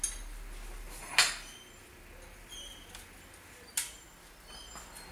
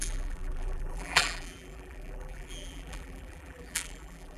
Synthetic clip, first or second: second